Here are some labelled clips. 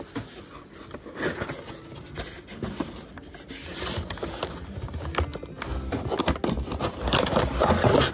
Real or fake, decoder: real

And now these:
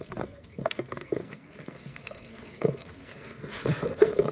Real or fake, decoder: fake, codec, SNAC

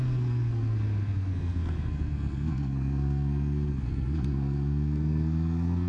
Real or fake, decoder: fake, codec, SNAC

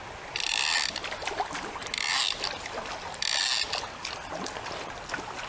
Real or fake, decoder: real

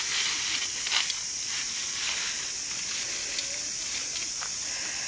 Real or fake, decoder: real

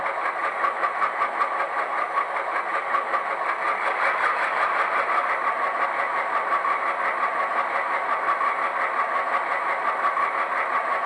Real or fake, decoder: real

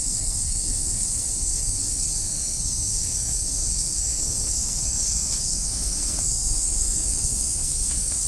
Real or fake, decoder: fake, codec, SNAC